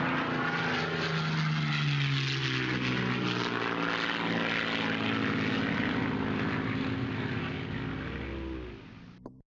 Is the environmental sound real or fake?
real